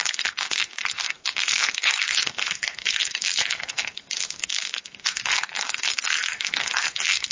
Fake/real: fake